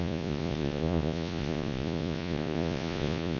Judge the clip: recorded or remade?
remade